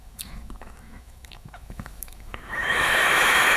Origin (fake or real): fake